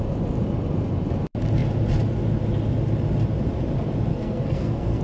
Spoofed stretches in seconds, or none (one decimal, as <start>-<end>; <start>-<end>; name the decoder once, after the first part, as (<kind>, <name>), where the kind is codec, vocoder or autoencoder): 4.1-5.0 (codec, SNAC)